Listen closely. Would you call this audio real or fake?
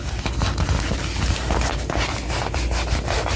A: real